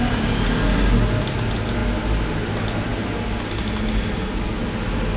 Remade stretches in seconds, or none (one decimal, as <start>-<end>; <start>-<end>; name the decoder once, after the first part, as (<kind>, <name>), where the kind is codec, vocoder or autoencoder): none